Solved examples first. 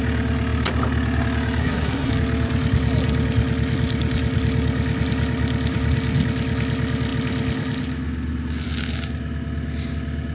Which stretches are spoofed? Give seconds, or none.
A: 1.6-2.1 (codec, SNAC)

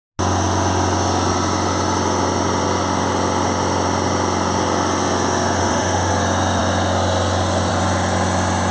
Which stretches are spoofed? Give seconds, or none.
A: 5.6-6.1 (autoencoder, DAC-VAE)